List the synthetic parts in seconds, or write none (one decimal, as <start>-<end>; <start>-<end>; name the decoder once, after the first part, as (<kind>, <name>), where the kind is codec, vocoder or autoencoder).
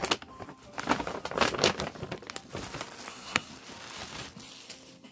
3.1-3.5 (codec, SNAC)